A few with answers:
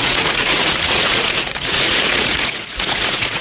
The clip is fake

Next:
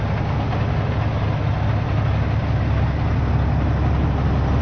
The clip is real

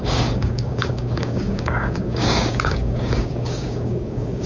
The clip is fake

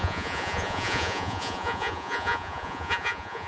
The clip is fake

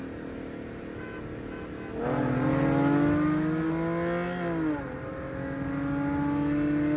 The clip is real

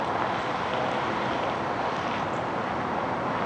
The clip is real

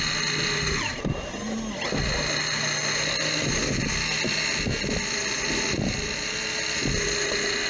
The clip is real